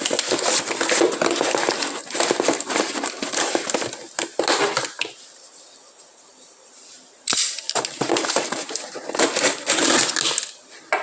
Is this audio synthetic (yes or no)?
no